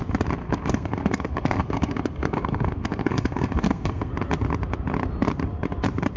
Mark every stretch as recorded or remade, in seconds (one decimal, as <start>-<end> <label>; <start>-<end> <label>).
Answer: 0.0-0.4 recorded; 0.4-4.1 remade; 4.1-6.2 recorded